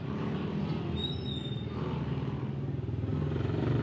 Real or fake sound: real